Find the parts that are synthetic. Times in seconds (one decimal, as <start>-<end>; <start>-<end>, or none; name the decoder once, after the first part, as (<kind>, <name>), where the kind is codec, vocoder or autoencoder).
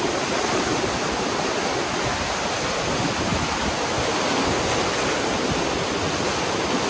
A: none